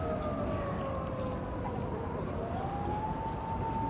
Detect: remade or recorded recorded